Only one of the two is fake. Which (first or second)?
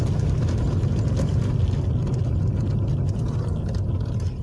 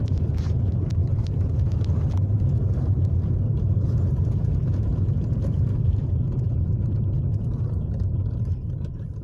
second